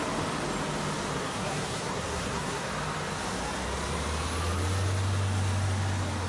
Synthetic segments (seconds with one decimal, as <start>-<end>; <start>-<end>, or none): 1.1-2.7